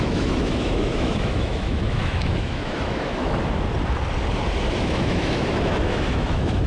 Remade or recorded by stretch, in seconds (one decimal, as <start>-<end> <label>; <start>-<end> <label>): 0.0-3.4 remade; 3.4-4.8 recorded; 4.8-6.7 remade